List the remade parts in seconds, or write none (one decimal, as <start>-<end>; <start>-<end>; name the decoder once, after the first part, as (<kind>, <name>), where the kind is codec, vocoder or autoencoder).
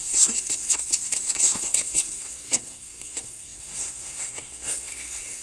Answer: 0.0-5.4 (codec, SNAC)